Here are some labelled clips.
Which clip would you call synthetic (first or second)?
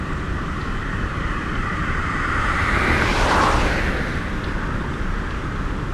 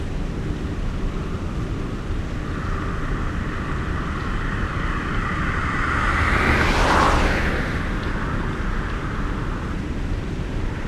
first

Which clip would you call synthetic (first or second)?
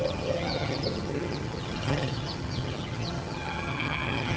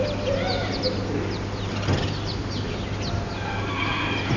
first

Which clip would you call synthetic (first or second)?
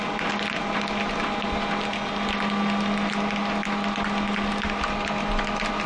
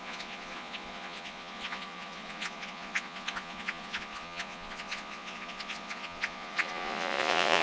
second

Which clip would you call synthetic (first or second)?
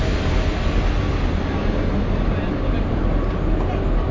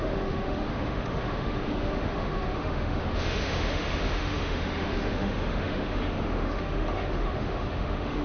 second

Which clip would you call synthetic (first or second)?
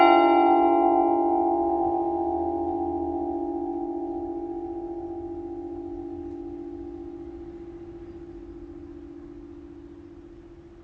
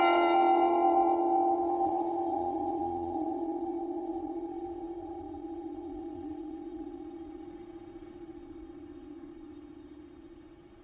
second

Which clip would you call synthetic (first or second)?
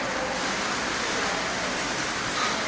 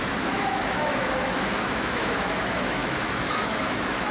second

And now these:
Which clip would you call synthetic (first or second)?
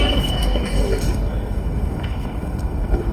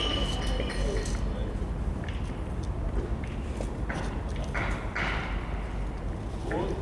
first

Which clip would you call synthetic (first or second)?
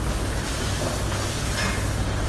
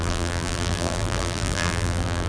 second